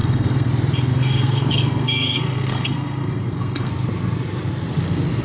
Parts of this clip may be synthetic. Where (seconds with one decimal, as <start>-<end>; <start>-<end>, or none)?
0.0-0.5; 0.9-3.7